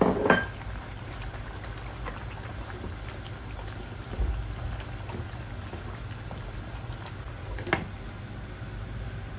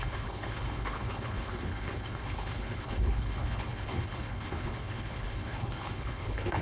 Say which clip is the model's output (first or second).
second